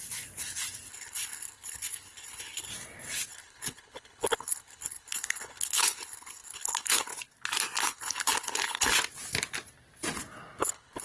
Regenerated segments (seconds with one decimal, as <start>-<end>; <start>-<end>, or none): 0.9-2.7; 3.3-7.1; 7.8-8.9; 10.6-11.0